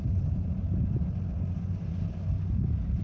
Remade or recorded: recorded